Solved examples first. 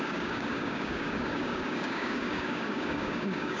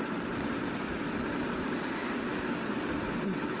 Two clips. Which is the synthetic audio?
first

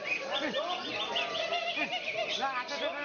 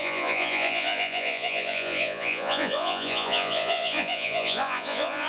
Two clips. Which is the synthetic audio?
second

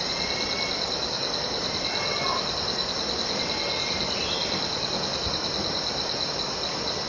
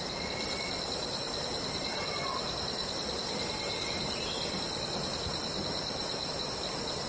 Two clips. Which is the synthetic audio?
second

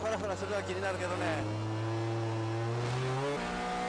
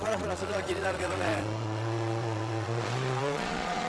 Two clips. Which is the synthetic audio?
second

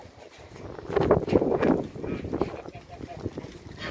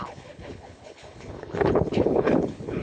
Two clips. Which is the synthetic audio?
second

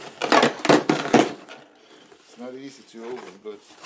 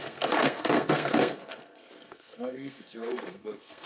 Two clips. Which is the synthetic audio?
second